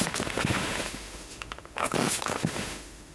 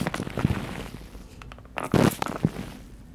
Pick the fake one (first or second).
first